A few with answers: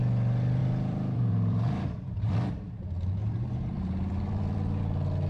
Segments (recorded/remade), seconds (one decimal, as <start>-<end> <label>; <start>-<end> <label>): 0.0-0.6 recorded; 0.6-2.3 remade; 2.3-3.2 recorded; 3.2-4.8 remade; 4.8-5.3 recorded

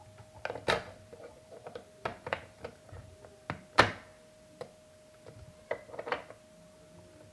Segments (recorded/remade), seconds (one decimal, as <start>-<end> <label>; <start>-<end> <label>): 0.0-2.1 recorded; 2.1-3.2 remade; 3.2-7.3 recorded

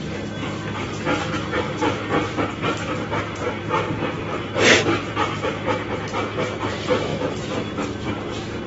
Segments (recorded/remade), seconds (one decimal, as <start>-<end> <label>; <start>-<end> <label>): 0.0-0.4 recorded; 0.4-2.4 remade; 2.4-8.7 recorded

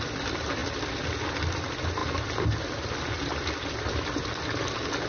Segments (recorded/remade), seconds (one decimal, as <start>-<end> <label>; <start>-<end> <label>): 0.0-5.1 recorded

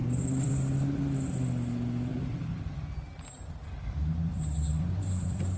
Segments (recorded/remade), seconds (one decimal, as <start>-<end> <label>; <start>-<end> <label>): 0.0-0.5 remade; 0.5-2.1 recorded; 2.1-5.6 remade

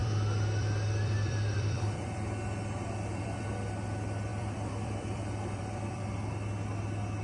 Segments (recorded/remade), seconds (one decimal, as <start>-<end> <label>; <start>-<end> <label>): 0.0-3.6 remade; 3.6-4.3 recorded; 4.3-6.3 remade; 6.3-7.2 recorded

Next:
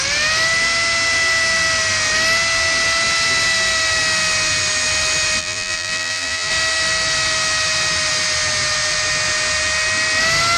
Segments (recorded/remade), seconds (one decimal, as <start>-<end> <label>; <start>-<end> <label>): 0.0-5.4 recorded; 5.4-6.5 remade; 6.5-10.6 recorded